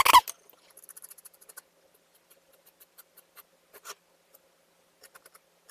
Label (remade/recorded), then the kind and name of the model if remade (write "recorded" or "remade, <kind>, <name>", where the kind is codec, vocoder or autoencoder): recorded